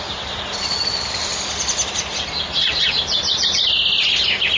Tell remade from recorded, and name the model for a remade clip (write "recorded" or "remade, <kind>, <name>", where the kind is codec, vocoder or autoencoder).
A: recorded